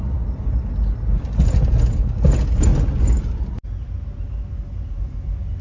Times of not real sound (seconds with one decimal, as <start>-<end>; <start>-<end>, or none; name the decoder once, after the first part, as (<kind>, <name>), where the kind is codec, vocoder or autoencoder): none